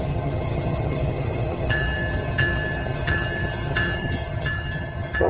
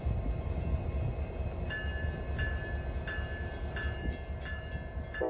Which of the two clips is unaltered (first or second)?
second